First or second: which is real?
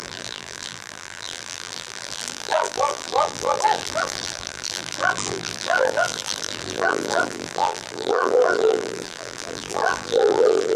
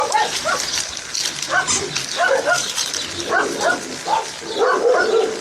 second